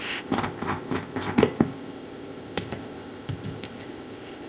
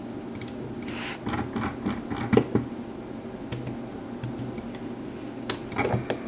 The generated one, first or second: first